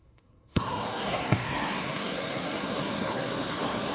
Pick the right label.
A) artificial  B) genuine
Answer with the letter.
A